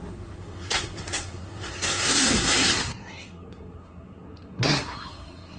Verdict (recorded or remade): remade